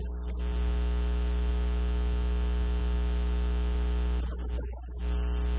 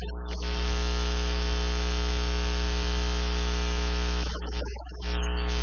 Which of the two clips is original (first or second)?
first